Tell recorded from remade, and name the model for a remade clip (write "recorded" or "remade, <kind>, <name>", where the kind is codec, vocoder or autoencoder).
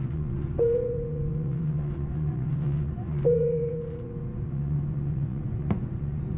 remade, vocoder, Vocos